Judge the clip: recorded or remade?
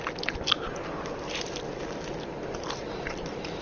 recorded